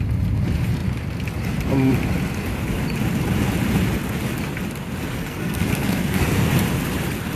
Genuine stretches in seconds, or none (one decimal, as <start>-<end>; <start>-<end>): 0.0-5.1; 6.5-7.4